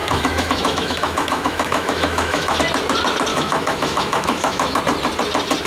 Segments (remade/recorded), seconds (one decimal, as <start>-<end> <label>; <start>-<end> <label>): 0.0-2.6 remade; 2.6-3.3 recorded; 3.3-4.8 remade; 4.8-5.7 recorded